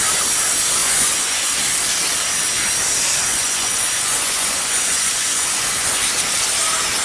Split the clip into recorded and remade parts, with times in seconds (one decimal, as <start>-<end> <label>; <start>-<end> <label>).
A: 0.0-0.8 recorded; 0.8-1.5 remade; 1.5-3.3 recorded; 3.3-6.0 remade; 6.0-7.0 recorded